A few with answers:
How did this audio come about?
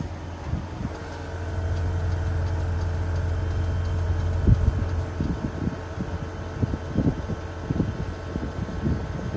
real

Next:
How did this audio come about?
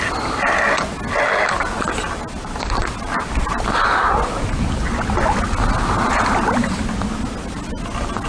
real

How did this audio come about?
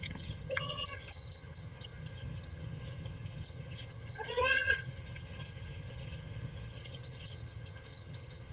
fake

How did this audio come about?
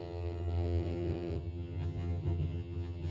fake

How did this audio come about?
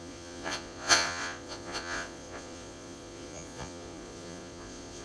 fake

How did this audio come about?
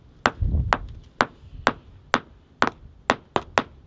real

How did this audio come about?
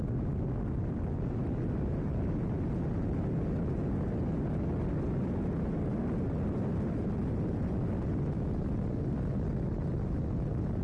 real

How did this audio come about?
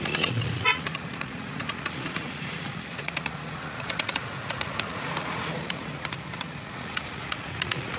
fake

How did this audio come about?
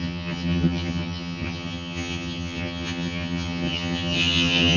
fake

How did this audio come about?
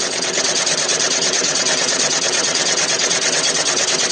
fake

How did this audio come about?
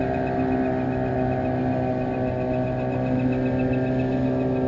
real